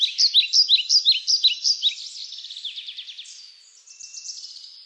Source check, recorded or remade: recorded